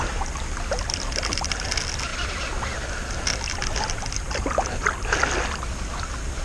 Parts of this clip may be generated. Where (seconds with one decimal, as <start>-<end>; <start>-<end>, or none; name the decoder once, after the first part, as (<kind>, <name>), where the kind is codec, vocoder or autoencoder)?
none